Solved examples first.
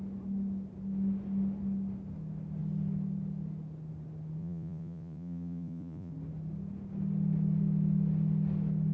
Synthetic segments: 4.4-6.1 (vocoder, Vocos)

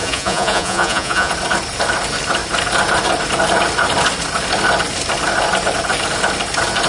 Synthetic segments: 0.0-1.3 (vocoder, Vocos)

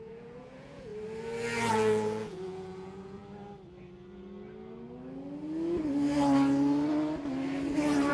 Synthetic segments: 0.0-0.9 (vocoder, Vocos); 1.7-3.2

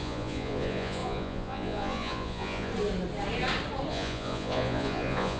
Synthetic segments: 0.0-2.7 (vocoder, Vocos); 3.9-5.4

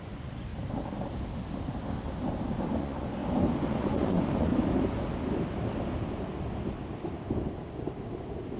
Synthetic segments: 0.0-0.5 (vocoder, Vocos); 2.8-3.2; 3.7-4.5

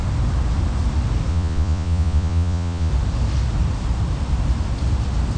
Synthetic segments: 1.3-2.9 (vocoder, Vocos)

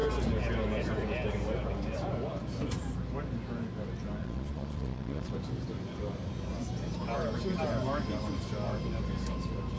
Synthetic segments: 4.2-5.3 (vocoder, Vocos)

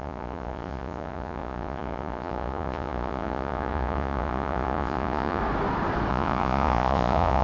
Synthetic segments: 0.0-5.4 (vocoder, Vocos); 6.1-7.4